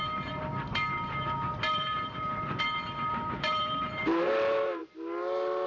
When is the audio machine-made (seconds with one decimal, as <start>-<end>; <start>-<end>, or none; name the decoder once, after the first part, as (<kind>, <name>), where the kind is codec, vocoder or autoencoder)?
0.0-4.8 (vocoder, BigVGAN v2)

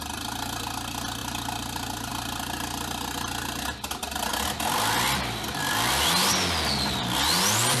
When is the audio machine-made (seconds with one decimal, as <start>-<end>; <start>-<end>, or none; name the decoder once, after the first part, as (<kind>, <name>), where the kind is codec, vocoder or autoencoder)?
none

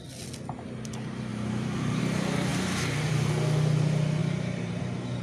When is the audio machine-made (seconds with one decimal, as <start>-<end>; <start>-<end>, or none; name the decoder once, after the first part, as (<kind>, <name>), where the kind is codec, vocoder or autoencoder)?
1.3-2.0 (vocoder, BigVGAN v2); 2.5-3.3; 4.2-4.8

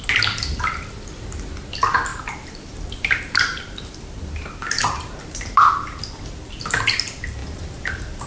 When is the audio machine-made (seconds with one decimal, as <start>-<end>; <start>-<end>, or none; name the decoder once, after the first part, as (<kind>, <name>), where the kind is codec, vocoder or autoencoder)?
2.1-3.9 (vocoder, BigVGAN v2); 7.4-8.3

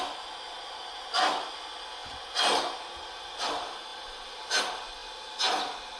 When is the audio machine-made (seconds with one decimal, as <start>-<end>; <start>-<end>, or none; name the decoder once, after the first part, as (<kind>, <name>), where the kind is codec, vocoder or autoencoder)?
none